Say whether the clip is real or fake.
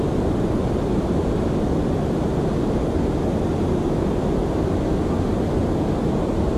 real